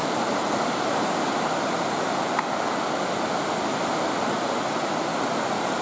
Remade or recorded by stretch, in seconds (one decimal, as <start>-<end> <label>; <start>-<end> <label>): 0.0-5.8 recorded